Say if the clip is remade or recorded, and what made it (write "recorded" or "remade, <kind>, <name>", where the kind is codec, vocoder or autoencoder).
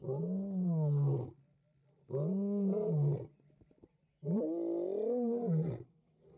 recorded